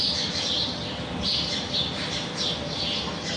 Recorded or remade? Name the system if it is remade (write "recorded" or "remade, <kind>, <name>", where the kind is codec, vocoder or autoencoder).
recorded